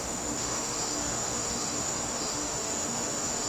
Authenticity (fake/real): fake